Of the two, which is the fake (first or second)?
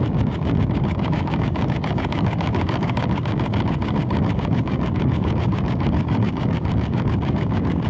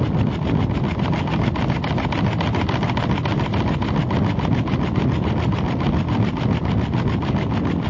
first